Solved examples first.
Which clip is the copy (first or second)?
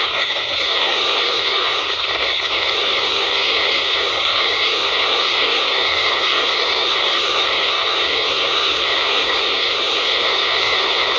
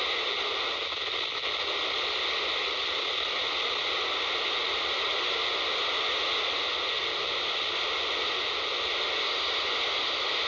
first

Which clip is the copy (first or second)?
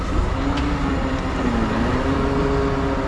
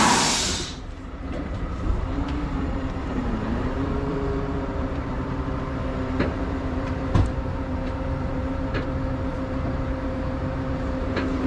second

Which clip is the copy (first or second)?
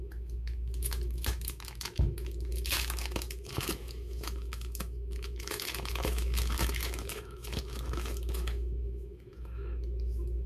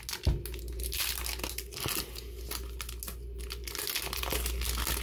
first